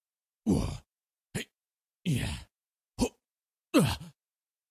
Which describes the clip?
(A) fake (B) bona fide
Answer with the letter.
B